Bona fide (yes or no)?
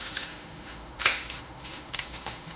no